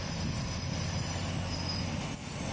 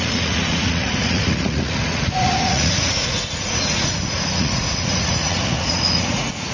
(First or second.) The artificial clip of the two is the second